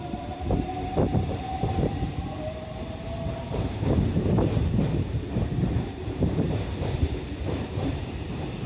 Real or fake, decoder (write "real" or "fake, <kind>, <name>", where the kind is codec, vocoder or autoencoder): fake, vocoder, BigVGAN v2